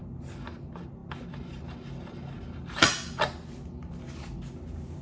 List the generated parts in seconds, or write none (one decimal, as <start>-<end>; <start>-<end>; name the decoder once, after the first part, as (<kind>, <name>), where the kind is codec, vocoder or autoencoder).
none